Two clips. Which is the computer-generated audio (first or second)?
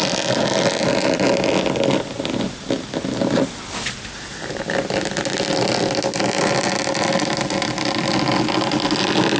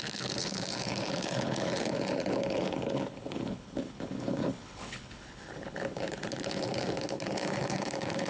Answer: second